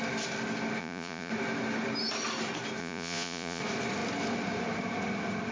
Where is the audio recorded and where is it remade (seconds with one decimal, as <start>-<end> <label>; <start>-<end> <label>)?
0.0-0.8 recorded; 0.8-1.3 remade; 1.3-2.8 recorded; 2.8-3.6 remade; 3.6-5.5 recorded